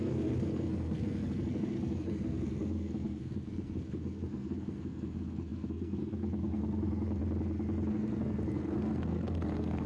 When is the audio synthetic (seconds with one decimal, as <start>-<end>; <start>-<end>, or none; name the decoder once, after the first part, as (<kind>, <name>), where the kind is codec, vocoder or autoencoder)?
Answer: 0.0-7.2 (codec, SNAC); 7.9-9.9